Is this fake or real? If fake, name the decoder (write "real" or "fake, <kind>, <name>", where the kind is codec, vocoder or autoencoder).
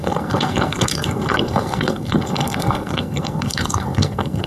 fake, codec, SNAC